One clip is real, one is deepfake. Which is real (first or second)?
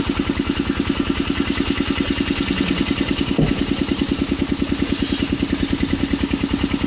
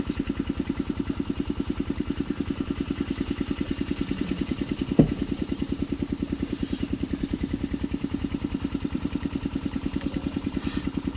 first